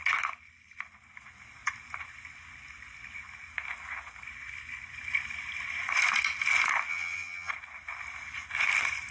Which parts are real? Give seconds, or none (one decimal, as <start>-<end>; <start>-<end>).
0.0-6.9; 7.5-9.1